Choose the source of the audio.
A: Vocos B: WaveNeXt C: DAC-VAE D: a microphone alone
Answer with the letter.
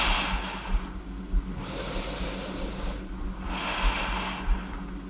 D